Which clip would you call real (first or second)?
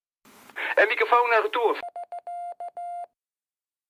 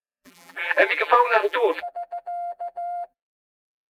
first